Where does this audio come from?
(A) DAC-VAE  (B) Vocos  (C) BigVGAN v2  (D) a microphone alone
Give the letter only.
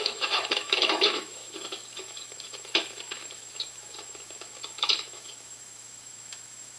A